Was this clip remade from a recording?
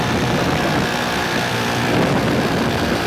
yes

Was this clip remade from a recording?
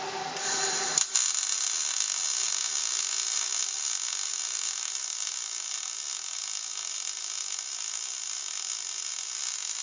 no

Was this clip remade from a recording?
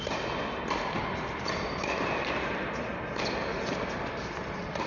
no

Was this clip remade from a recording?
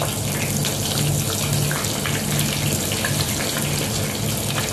no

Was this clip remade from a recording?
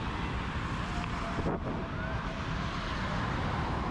no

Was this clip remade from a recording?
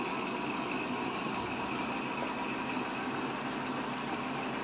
no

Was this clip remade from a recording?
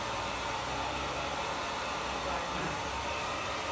no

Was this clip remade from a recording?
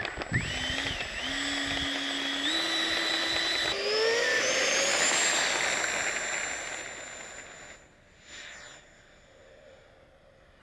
no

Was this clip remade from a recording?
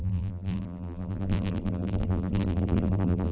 yes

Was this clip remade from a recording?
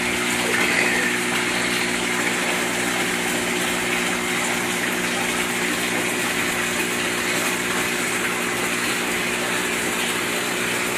no